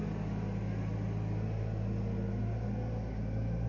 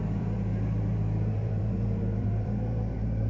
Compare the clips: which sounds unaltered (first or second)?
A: first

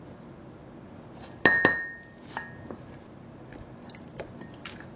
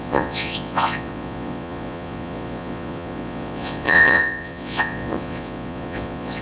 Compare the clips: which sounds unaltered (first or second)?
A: first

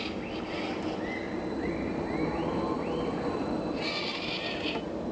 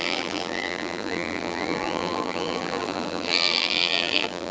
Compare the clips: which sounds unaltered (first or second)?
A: first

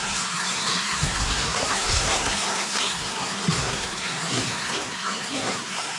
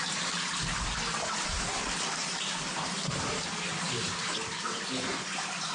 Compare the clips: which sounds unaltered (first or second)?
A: second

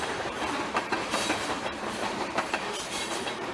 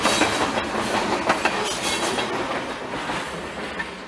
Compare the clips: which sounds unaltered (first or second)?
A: second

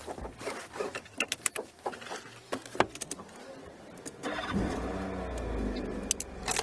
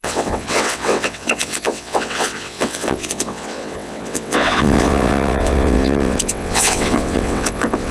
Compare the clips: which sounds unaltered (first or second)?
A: first